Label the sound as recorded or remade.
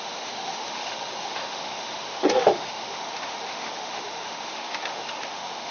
remade